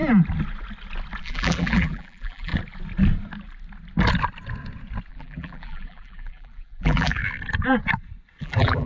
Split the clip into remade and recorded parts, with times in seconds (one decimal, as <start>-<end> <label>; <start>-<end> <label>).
0.0-1.2 recorded; 1.2-2.5 remade; 2.5-5.1 recorded; 5.1-7.2 remade; 7.2-8.4 recorded; 8.4-8.9 remade